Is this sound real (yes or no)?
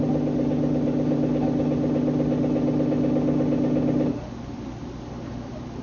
yes